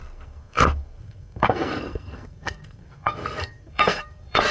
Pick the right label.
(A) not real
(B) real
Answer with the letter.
A